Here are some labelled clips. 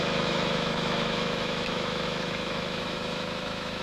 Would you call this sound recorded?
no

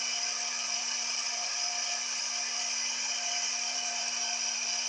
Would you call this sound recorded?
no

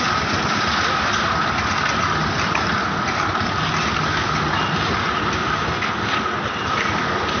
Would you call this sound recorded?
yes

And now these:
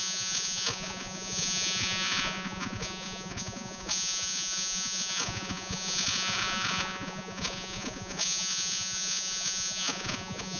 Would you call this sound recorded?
no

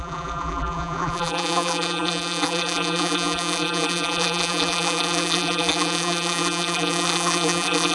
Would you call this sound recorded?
no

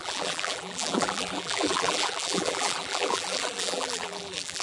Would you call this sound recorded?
no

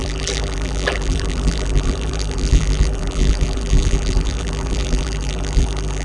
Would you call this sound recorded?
no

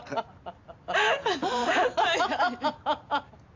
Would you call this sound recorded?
yes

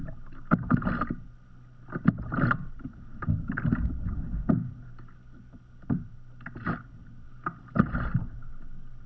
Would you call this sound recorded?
yes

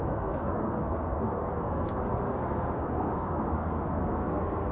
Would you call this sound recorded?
no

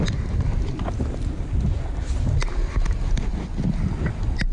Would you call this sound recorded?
yes